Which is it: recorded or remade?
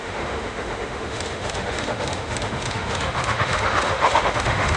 remade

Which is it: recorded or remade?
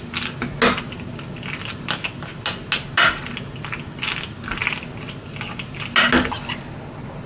recorded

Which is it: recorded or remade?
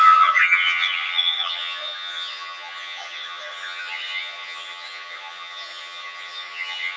remade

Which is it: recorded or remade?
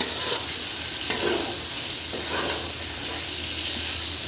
recorded